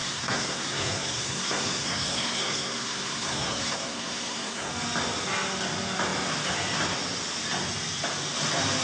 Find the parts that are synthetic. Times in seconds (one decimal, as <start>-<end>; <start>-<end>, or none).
0.0-4.7